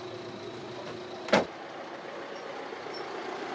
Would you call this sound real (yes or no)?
yes